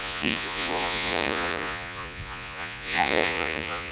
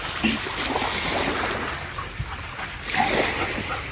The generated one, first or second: first